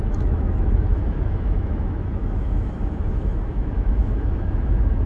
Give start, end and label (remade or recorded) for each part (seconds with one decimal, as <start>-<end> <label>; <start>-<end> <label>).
0.0-5.1 remade